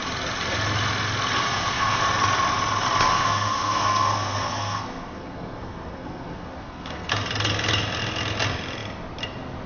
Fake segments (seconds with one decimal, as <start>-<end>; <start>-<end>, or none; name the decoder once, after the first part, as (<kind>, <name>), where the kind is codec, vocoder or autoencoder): 1.4-2.0 (codec, SNAC); 3.1-7.1